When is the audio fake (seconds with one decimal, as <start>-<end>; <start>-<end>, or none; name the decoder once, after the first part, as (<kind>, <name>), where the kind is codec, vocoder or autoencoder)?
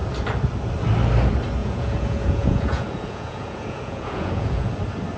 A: 1.6-4.7 (vocoder, Vocos)